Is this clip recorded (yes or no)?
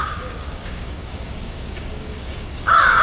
no